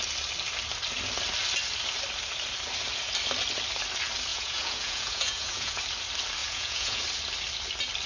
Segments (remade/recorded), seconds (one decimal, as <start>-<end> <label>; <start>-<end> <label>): 0.0-4.3 recorded; 4.3-5.8 remade; 5.8-6.4 recorded; 6.4-7.0 remade; 7.0-8.1 recorded